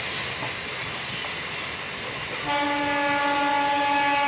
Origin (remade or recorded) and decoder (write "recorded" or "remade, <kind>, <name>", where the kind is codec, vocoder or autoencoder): recorded